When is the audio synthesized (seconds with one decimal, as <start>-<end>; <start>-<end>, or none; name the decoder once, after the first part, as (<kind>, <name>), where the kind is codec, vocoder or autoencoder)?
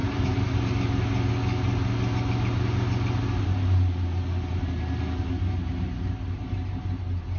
0.0-1.3 (vocoder, BigVGAN v2)